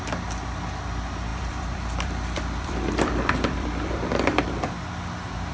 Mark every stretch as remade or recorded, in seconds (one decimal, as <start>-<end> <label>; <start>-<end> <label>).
0.0-1.3 recorded; 1.3-4.4 remade; 4.4-5.5 recorded